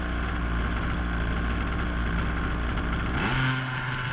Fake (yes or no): no